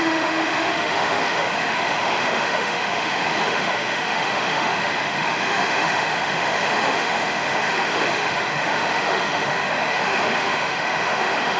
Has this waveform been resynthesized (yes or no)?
yes